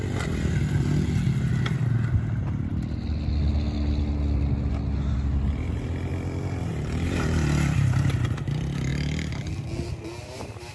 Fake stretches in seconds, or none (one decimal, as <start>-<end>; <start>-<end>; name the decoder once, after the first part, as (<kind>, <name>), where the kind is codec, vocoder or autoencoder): 6.7-8.1 (vocoder, BigVGAN v2)